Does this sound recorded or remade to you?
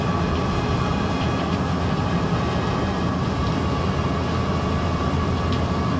recorded